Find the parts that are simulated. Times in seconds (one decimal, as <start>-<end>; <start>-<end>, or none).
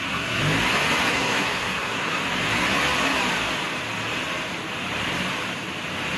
0.0-0.4; 1.1-2.2